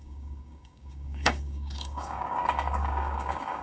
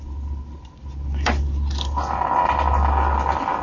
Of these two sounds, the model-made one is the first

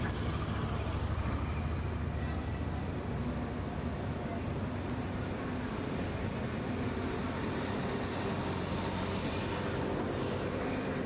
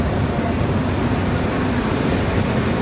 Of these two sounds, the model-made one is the second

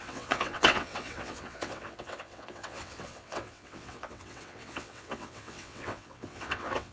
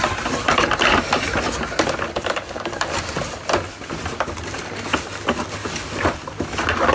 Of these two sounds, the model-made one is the first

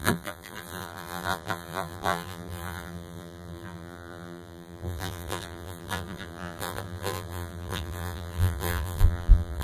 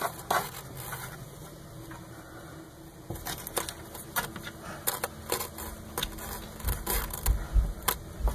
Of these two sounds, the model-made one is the first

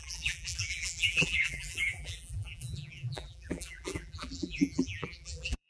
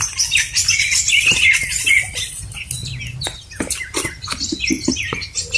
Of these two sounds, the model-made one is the first